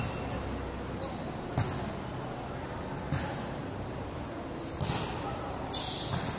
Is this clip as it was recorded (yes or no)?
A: yes